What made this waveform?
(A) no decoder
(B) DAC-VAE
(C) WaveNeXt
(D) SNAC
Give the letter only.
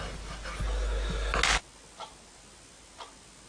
A